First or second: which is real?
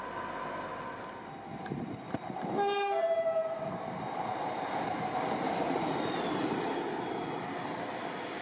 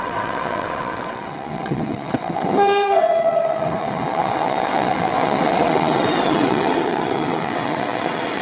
first